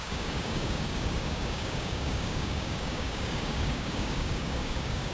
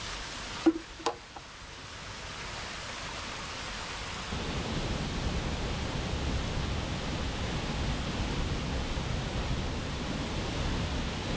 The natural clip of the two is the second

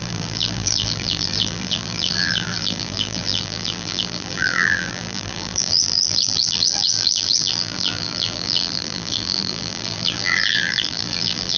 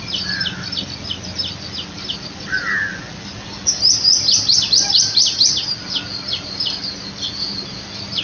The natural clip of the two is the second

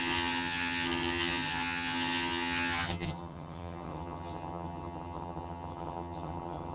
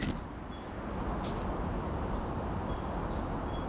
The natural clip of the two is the second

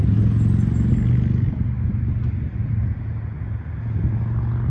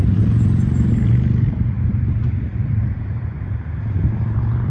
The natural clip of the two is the first